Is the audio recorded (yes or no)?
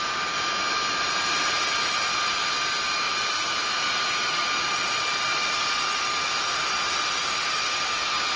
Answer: yes